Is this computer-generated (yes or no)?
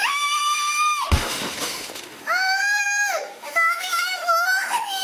yes